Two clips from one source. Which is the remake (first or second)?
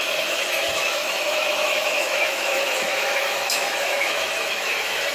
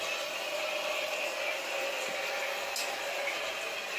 first